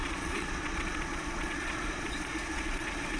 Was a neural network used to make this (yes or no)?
yes